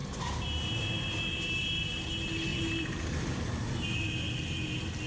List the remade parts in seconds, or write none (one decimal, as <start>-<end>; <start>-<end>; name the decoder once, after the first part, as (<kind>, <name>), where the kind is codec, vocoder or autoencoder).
0.0-2.1 (vocoder, BigVGAN v2); 2.5-3.4